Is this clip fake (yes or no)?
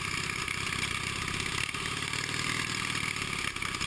no